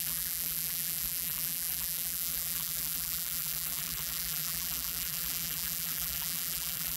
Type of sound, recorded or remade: remade